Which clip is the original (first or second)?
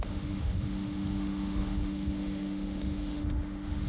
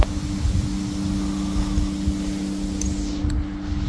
second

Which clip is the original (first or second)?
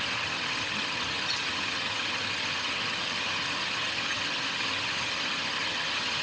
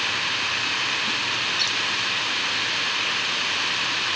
second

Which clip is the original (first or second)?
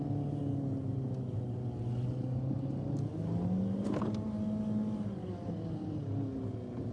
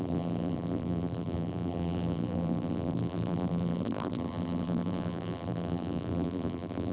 first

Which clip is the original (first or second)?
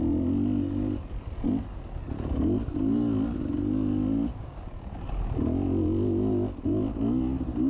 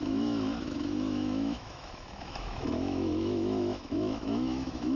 first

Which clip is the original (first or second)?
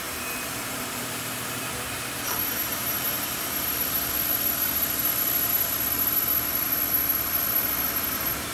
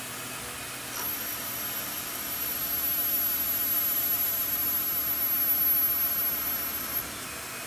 second